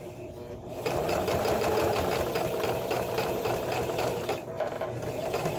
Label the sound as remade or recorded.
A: remade